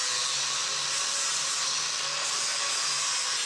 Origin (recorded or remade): recorded